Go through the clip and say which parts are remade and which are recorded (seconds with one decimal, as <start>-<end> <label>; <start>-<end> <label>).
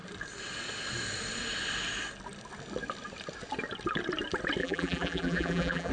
0.0-4.6 recorded; 4.6-5.9 remade